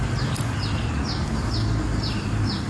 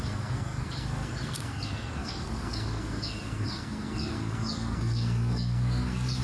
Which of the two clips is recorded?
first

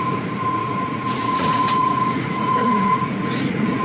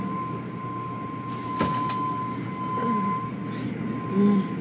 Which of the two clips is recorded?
second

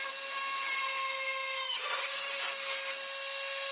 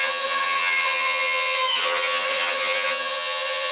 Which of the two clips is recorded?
first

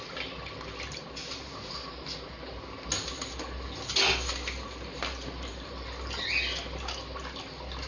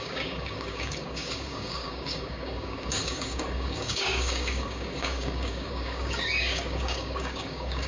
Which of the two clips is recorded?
first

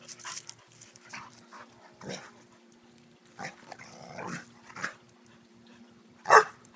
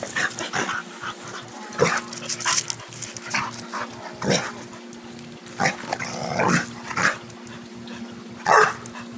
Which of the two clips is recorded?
second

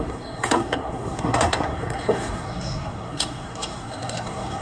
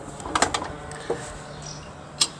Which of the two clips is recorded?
second